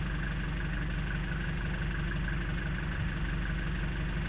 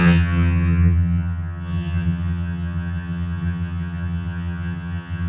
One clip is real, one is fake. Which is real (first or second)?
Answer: first